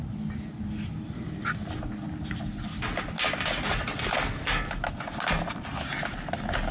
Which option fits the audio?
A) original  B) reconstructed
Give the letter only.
A